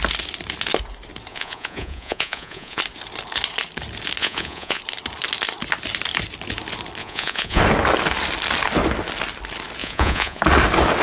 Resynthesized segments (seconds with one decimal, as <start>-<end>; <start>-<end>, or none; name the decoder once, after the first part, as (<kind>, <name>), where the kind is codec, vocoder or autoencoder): 1.3-2.8 (vocoder, Vocos); 4.2-4.8; 7.0-7.6; 9.8-10.4

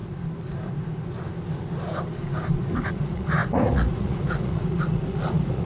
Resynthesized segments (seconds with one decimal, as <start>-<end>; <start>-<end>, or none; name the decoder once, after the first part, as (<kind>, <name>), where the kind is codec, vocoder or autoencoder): 2.9-5.7 (vocoder, Vocos)

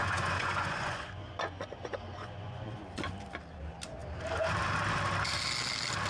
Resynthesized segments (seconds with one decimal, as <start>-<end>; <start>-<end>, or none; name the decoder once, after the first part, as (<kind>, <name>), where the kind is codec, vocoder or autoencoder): 0.0-3.0 (vocoder, Vocos)

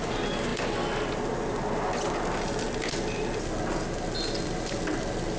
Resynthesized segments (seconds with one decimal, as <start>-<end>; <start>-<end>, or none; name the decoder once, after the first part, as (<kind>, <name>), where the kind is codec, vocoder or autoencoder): none

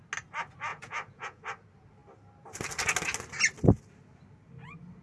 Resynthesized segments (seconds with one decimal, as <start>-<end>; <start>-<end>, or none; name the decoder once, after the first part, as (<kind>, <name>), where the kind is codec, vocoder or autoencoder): 0.7-1.4 (vocoder, Vocos)

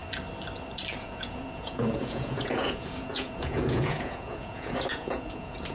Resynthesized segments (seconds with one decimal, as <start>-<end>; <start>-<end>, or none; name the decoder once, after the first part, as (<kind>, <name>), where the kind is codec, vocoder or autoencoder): 1.0-5.7 (vocoder, Vocos)